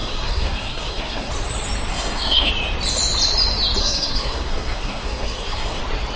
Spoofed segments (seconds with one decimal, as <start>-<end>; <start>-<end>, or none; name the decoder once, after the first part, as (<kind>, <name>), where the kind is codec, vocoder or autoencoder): 0.0-1.3 (codec, SNAC); 1.9-2.5; 3.8-5.8